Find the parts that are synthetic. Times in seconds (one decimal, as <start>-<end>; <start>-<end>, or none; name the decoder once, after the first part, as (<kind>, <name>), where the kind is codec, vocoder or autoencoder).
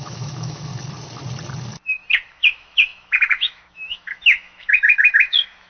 0.0-0.7 (autoencoder, DAC-VAE); 2.3-5.7